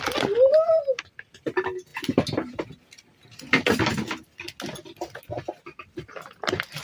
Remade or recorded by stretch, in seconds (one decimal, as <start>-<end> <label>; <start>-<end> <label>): 0.0-6.8 recorded